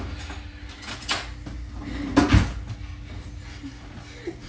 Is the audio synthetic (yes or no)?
no